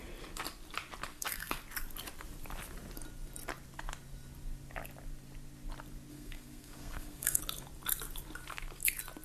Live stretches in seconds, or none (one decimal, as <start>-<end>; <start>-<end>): 0.0-1.1; 1.6-6.1; 7.4-9.2